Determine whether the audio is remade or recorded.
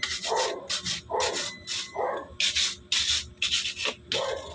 recorded